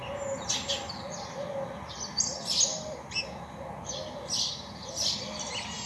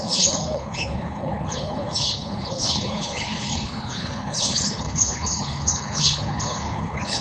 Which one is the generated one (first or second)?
second